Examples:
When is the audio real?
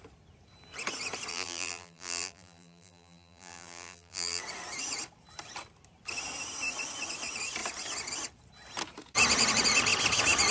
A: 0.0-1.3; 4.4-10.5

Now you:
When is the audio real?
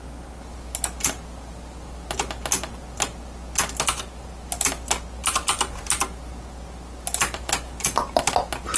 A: 0.0-8.8